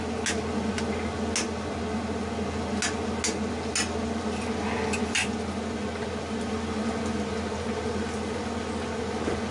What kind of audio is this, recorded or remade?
recorded